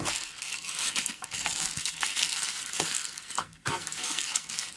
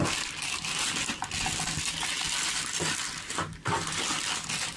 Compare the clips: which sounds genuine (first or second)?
second